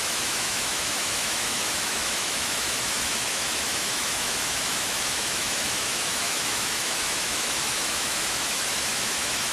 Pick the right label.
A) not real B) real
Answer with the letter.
A